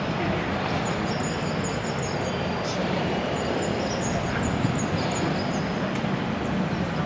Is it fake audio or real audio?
real